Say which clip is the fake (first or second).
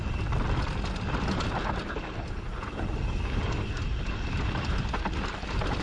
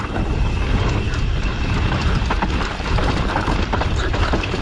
second